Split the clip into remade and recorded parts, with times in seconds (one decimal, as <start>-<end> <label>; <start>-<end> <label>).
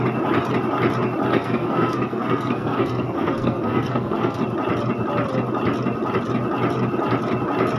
0.0-1.3 recorded; 1.3-4.4 remade; 4.4-7.8 recorded